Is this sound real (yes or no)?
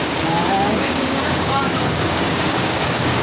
no